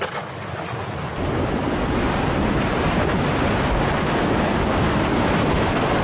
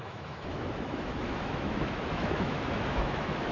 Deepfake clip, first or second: second